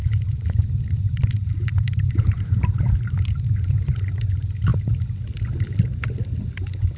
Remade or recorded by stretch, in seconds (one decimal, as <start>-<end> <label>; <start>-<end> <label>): 0.0-3.9 remade; 3.9-7.0 recorded